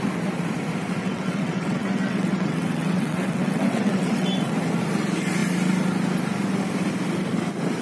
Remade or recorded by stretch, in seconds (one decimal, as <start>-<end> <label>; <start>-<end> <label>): 0.0-1.0 recorded; 1.0-4.5 remade; 4.5-7.8 recorded